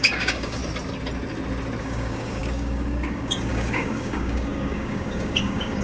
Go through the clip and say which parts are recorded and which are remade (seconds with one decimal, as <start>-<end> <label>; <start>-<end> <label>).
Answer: 0.0-0.6 remade; 0.6-1.8 recorded; 1.8-5.8 remade